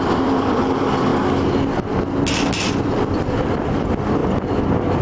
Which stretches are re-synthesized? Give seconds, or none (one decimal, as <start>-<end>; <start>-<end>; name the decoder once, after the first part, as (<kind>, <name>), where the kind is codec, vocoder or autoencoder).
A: 0.0-1.1 (vocoder, BigVGAN v2); 2.8-4.2

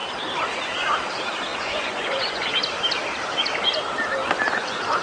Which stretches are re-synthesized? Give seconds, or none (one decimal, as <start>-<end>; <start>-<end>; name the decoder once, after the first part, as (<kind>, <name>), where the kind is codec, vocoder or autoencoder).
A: 1.5-2.5 (vocoder, Vocos); 4.2-5.0

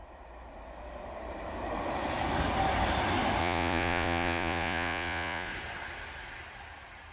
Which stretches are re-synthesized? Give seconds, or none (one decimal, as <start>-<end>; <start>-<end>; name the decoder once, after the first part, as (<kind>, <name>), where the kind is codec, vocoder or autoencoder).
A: 3.4-5.5 (vocoder, Vocos)